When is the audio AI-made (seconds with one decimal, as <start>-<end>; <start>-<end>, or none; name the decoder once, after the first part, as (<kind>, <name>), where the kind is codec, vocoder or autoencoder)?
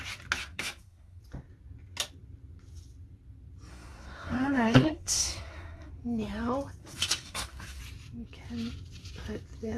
0.4-1.2 (codec, SNAC); 3.7-5.9; 6.8-7.8